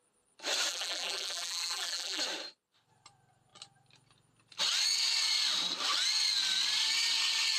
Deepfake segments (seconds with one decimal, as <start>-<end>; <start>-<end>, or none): 0.7-2.2